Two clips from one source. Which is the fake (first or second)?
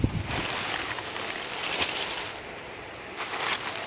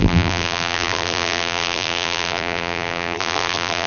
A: second